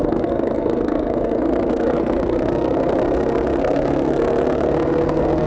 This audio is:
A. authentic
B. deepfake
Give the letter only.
B